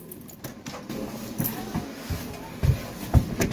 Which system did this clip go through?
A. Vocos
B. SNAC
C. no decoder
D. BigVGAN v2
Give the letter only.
C